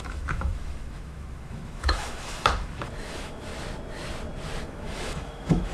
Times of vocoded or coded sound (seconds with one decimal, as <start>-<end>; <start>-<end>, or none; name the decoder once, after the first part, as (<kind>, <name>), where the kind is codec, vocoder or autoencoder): 0.0-3.5 (autoencoder, DAC-VAE); 4.6-5.7